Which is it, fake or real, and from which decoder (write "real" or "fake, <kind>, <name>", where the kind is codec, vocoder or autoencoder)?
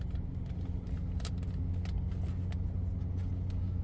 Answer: real